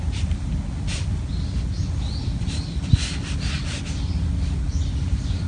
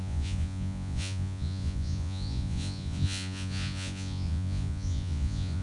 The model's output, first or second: second